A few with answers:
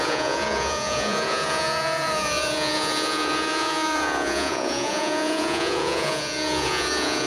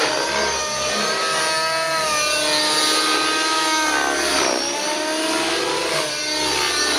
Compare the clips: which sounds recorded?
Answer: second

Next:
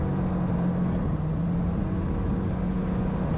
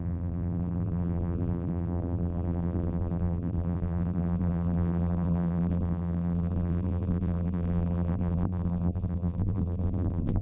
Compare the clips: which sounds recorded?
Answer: first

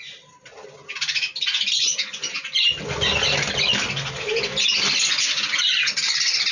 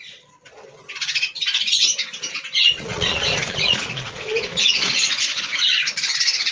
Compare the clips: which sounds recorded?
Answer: first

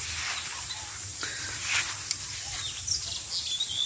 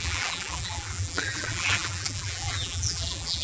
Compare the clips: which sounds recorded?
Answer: first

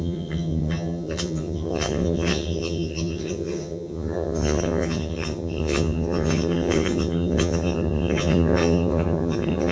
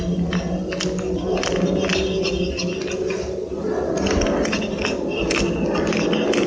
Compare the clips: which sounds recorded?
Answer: second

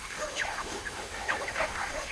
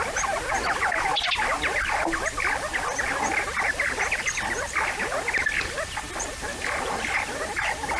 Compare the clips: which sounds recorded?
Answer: second